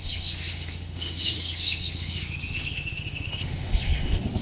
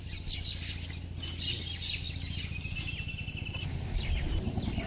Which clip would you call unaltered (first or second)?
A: second